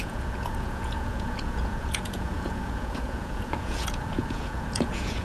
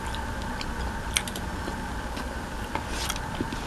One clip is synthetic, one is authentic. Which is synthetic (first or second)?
first